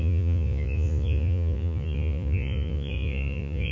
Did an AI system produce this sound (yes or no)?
yes